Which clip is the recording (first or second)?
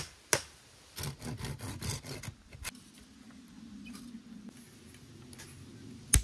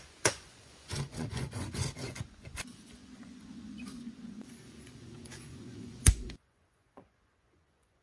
first